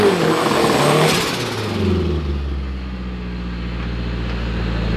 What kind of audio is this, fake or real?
real